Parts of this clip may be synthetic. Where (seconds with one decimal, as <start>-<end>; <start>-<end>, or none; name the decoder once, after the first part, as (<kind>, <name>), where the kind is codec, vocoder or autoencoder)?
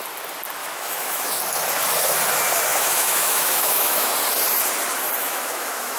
0.6-1.4 (autoencoder, DAC-VAE); 2.7-4.1; 5.2-6.0